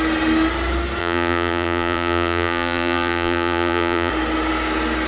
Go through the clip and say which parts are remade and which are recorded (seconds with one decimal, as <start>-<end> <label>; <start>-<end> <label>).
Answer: 0.0-1.0 recorded; 1.0-4.1 remade; 4.1-5.1 recorded

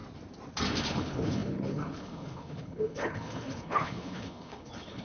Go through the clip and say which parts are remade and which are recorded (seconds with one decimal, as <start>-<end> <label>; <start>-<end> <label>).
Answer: 0.0-0.8 recorded; 0.8-5.0 remade

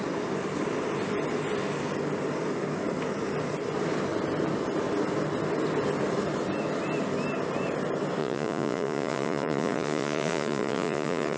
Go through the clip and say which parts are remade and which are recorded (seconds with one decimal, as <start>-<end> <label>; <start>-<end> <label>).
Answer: 0.0-8.2 recorded; 8.2-11.4 remade

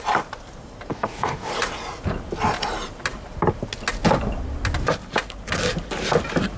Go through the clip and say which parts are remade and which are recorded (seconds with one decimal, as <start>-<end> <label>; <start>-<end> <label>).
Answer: 0.0-0.9 recorded; 0.9-1.5 remade; 1.5-6.6 recorded

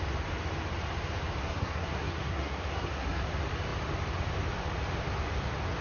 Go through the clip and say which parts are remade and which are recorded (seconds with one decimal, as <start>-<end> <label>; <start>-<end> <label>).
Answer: 0.0-1.4 recorded; 1.4-3.3 remade; 3.3-5.8 recorded

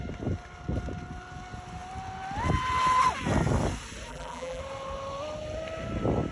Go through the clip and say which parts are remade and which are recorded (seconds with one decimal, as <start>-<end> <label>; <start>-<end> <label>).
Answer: 0.0-4.1 recorded; 4.1-4.6 remade; 4.6-6.3 recorded

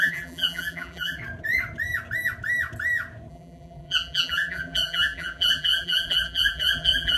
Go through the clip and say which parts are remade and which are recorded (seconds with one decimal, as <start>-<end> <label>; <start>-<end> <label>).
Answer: 0.0-1.2 remade; 1.2-3.3 recorded; 3.3-7.2 remade